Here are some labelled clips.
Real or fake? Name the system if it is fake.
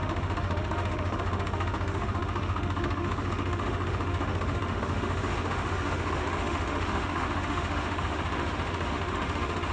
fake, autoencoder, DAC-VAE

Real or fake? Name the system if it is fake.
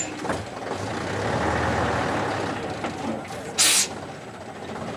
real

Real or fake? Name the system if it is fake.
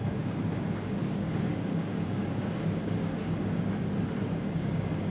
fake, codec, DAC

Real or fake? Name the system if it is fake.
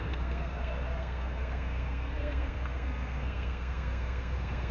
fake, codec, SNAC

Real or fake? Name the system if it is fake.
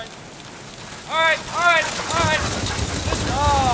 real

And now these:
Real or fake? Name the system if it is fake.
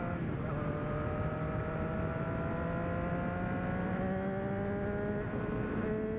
real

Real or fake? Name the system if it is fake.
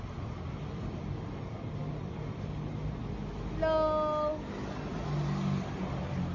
real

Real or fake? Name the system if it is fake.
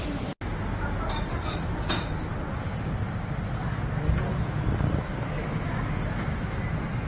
real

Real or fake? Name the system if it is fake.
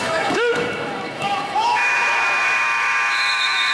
fake, autoencoder, DAC-VAE